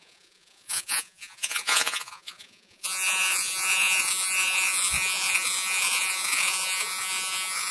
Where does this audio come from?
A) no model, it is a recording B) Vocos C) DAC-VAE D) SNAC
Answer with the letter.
B